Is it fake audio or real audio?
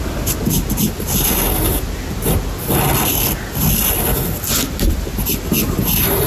real